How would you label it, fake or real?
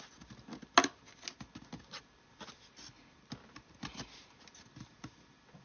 real